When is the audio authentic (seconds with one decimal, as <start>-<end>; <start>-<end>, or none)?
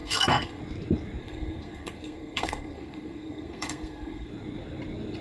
0.6-1.2; 4.3-5.2